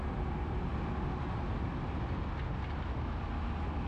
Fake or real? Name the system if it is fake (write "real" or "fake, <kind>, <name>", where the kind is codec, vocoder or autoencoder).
real